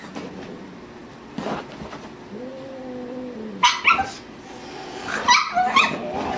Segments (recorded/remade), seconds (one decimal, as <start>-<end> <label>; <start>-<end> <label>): 0.0-6.4 recorded